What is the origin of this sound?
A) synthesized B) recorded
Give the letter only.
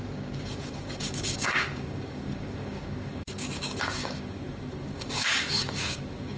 A